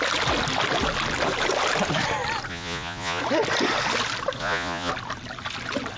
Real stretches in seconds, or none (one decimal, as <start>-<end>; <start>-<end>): 0.0-2.5; 3.2-4.4; 4.9-6.0